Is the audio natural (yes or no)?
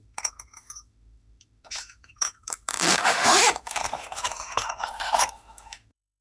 no